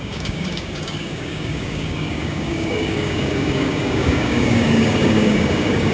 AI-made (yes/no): yes